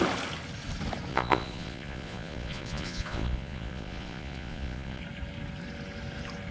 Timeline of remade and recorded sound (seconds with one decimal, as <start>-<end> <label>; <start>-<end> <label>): 0.0-1.1 recorded; 1.1-5.0 remade; 5.0-6.5 recorded